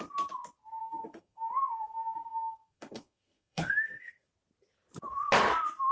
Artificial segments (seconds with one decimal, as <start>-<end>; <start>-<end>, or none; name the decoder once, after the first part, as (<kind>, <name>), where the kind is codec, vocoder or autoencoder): 0.8-4.3 (codec, SNAC)